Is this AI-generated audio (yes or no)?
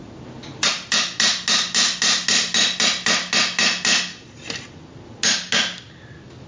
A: no